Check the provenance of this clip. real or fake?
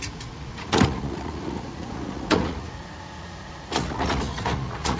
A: fake